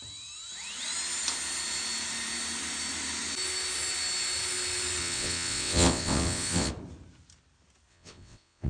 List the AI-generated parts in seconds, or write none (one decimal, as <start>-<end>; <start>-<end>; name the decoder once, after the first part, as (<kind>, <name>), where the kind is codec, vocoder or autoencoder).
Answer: 5.0-6.7 (vocoder, WaveNeXt); 7.9-8.7

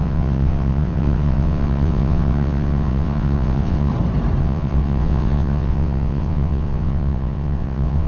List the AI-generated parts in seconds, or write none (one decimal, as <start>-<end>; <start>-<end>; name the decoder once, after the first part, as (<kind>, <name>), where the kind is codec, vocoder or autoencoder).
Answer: 0.0-3.9 (vocoder, WaveNeXt); 4.4-8.1

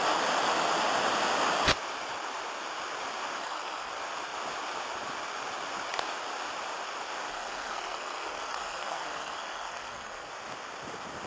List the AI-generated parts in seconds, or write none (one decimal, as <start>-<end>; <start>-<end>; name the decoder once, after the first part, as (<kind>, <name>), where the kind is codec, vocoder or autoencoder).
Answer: 3.4-3.9 (codec, SNAC); 7.3-10.3